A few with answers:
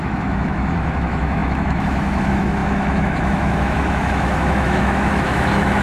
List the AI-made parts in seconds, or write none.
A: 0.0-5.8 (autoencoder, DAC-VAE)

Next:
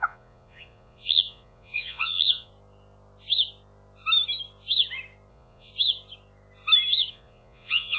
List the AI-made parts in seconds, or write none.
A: 0.0-2.5 (vocoder, Vocos); 5.3-5.7; 7.1-8.0

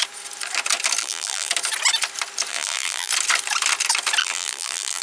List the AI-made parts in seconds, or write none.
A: 1.0-1.5 (vocoder, BigVGAN v2); 2.5-3.1; 4.2-5.0

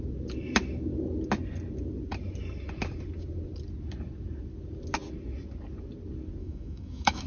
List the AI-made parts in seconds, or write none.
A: 6.4-7.3 (autoencoder, DAC-VAE)

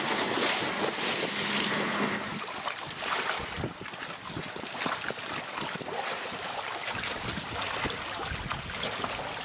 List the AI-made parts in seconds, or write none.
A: none

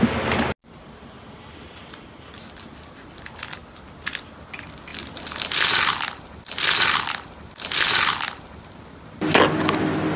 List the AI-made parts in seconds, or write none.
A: none